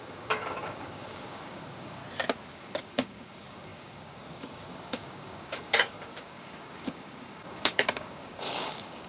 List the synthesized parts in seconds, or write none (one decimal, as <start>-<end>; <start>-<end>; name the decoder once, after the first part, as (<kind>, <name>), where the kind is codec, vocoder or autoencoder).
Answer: 0.0-2.0 (codec, DAC); 2.5-9.1